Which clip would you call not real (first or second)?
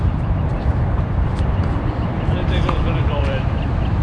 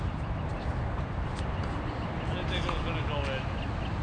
first